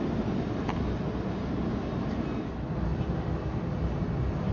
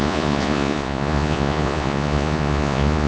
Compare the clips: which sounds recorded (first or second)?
first